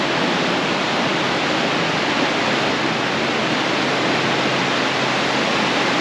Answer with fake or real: real